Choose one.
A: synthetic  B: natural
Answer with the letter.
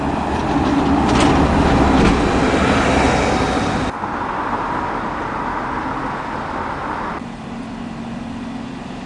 B